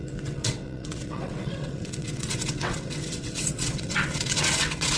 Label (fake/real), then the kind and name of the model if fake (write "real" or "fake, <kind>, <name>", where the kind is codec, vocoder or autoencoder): fake, vocoder, WaveNeXt